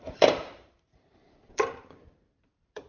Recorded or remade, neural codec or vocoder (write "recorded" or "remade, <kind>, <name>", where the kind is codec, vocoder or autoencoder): remade, vocoder, BigVGAN v2